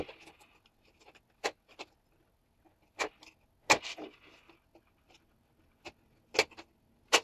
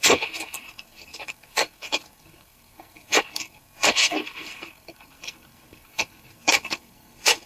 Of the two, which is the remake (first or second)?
second